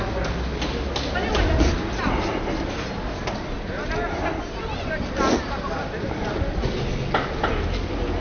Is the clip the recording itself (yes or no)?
yes